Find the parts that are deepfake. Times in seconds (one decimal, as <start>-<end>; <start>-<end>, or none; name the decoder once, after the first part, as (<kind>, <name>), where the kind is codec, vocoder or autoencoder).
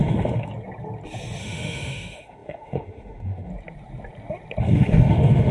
0.0-0.5 (autoencoder, DAC-VAE); 1.4-3.5; 4.6-5.5